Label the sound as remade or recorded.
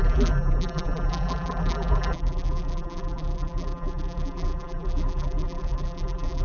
remade